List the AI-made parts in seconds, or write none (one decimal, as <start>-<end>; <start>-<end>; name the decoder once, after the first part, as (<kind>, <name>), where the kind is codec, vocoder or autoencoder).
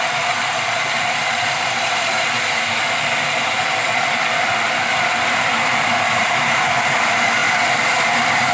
0.0-8.5 (vocoder, BigVGAN v2)